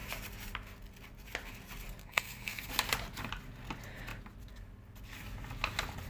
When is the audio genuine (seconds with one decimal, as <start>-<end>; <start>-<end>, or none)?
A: 0.0-2.0; 2.7-6.1